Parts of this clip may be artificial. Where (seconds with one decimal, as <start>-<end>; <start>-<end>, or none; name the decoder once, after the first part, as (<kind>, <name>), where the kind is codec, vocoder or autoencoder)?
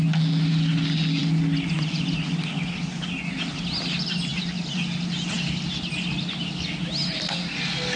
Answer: none